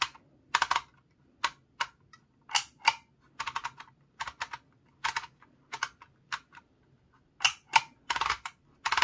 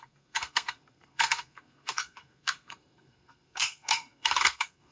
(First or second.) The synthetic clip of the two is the second